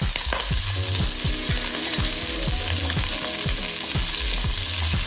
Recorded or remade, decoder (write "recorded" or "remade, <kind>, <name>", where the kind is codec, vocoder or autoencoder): recorded